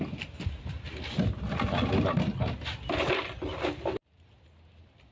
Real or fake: real